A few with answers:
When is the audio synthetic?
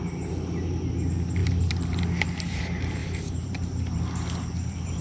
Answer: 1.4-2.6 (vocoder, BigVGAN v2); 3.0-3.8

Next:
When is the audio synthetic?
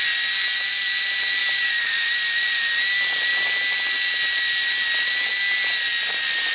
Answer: 1.4-2.7 (vocoder, BigVGAN v2)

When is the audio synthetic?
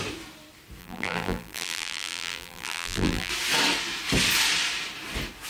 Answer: 0.8-3.3 (vocoder, BigVGAN v2)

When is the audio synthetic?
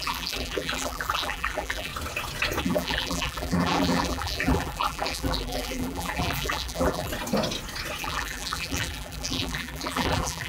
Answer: 0.0-1.9 (vocoder, BigVGAN v2); 2.6-7.1; 8.0-10.5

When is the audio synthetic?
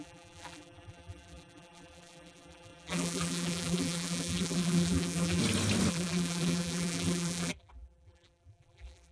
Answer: 0.0-5.4 (vocoder, BigVGAN v2); 5.9-9.1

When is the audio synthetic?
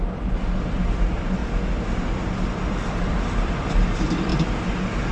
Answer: 0.0-1.4 (vocoder, BigVGAN v2); 2.7-4.3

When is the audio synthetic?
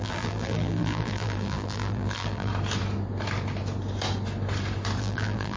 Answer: 0.0-2.5 (vocoder, BigVGAN v2); 5.0-5.6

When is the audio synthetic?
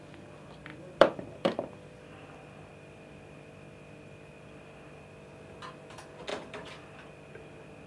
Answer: 0.7-5.3 (vocoder, BigVGAN v2); 6.3-7.3